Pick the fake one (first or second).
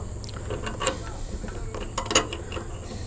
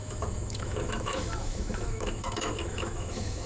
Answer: second